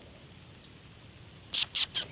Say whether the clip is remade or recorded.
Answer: recorded